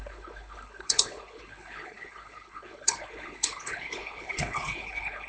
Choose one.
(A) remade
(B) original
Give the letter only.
A